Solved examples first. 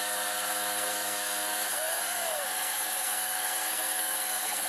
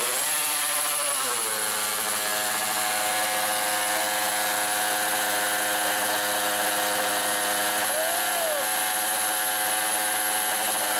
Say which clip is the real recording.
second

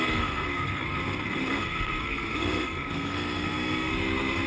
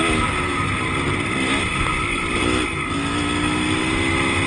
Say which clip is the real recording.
second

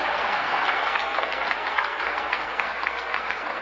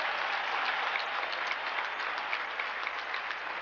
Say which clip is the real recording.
second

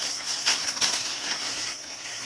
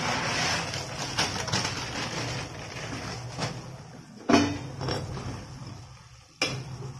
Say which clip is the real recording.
second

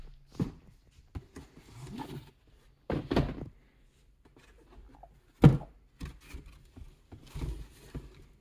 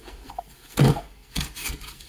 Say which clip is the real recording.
first